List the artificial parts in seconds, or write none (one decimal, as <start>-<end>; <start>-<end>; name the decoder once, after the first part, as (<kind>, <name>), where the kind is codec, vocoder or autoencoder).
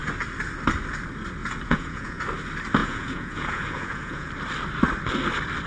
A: 1.4-2.2 (vocoder, Vocos); 2.8-4.3